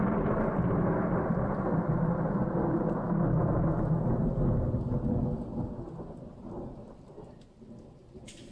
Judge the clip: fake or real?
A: real